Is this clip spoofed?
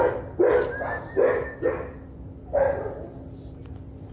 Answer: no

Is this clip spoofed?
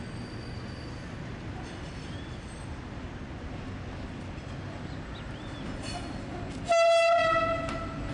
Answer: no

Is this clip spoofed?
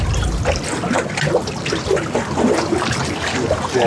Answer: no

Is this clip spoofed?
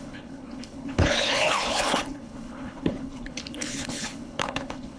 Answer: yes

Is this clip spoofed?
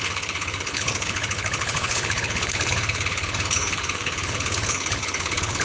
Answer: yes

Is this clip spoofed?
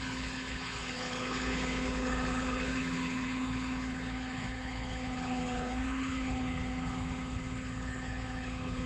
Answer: yes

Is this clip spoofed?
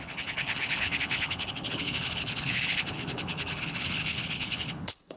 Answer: yes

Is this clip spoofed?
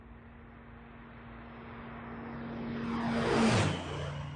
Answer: no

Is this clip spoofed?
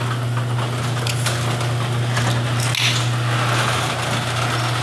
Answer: no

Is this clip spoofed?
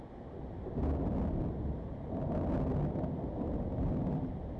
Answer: no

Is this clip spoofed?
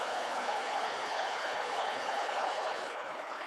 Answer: yes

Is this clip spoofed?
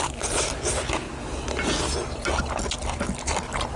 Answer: no